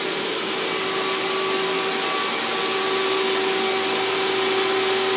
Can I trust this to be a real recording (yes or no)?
yes